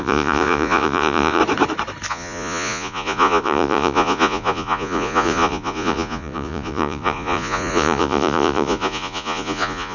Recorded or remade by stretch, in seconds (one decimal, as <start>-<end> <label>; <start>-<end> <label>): 0.0-1.4 remade; 1.4-2.1 recorded; 2.1-9.9 remade